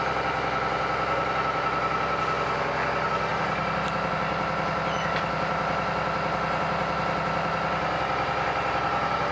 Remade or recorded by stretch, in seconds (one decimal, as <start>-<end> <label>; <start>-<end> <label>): 0.0-9.3 recorded